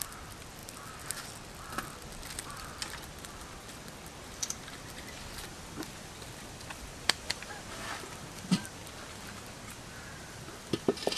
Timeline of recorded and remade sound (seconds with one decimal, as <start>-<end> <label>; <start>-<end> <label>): 0.0-0.6 remade; 0.6-3.2 recorded; 3.2-11.2 remade